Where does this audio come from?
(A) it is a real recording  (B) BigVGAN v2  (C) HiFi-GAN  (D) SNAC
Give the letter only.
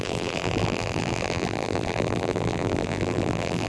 B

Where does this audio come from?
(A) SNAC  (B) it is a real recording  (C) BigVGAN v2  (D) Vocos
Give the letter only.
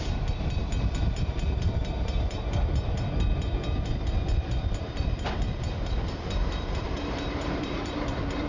C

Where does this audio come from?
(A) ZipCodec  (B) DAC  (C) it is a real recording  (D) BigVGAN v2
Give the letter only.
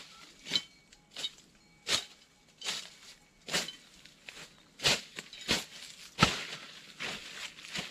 C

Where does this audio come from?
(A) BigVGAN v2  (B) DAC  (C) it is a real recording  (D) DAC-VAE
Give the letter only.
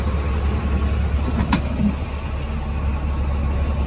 C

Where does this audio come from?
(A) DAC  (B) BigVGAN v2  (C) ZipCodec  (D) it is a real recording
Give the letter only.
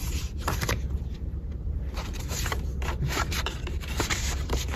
B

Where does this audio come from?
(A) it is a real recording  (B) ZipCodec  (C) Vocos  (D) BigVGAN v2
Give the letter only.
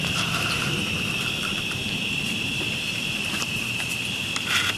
D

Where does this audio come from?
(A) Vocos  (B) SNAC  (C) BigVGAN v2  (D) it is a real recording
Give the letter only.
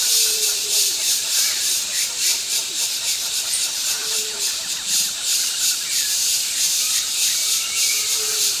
C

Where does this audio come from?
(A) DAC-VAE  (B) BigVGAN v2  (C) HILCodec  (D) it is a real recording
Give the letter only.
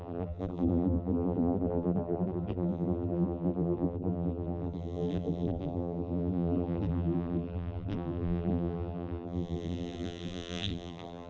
B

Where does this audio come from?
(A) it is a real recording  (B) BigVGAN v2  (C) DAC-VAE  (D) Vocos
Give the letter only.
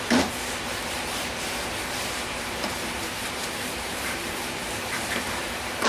B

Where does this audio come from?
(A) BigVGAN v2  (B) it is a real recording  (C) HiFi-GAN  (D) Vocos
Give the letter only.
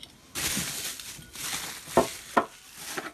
B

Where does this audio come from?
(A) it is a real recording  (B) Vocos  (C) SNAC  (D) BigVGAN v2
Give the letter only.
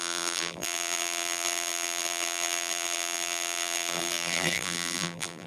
D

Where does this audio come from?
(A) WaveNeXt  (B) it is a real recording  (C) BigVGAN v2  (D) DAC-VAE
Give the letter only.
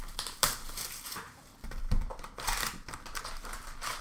C